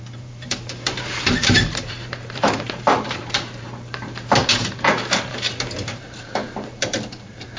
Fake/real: fake